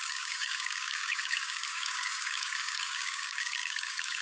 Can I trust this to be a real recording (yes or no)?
no